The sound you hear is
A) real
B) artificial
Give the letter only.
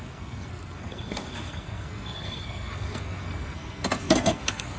B